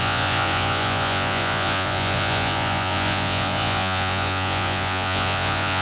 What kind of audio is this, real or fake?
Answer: fake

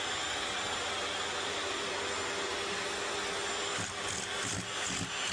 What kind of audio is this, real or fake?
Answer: real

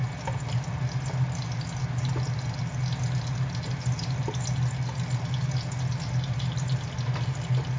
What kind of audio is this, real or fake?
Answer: real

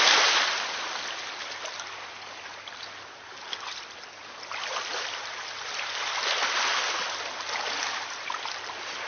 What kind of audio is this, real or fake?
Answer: real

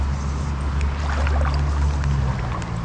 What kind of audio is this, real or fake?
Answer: real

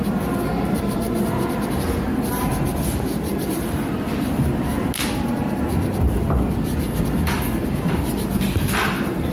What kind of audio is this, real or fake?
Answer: real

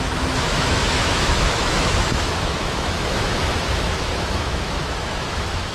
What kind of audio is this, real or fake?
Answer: fake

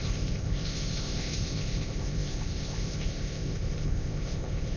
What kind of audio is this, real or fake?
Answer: fake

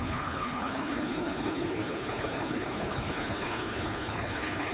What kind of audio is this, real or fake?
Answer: fake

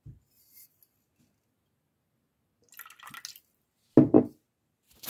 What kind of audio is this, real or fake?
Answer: real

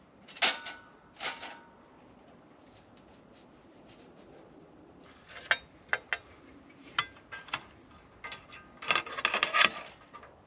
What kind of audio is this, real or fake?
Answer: real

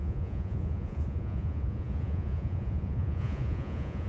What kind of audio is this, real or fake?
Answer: fake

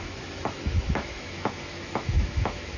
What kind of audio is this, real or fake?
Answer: fake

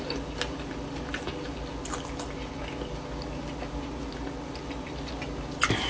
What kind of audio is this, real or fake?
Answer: real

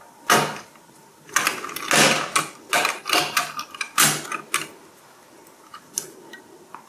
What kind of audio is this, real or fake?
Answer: real